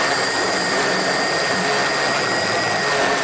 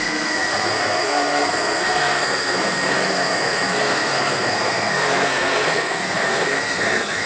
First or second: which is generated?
second